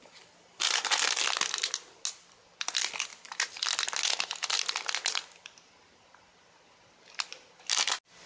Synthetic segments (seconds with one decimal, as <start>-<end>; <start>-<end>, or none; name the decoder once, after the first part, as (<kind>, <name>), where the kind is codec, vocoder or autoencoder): 3.1-3.7 (vocoder, BigVGAN v2)